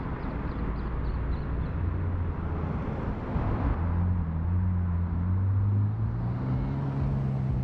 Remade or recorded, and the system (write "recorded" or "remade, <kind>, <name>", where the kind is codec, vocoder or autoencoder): recorded